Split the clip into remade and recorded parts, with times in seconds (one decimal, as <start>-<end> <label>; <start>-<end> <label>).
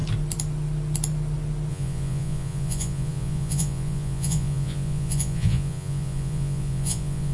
0.0-1.7 recorded; 1.7-7.3 remade